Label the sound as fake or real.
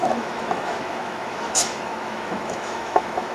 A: fake